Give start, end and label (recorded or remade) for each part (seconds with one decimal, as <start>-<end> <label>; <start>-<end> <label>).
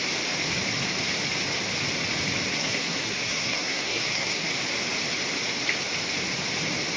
0.0-2.5 recorded; 2.5-4.5 remade; 4.5-7.0 recorded